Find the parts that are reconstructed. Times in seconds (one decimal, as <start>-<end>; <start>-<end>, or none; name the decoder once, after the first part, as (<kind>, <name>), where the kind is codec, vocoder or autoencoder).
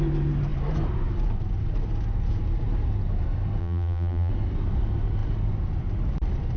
3.6-4.3 (vocoder, BigVGAN v2)